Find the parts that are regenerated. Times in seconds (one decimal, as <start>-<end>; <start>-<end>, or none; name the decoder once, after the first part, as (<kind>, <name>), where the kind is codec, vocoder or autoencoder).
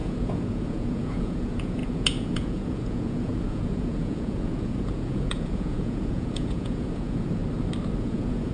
0.0-7.4 (vocoder, Vocos); 8.0-8.5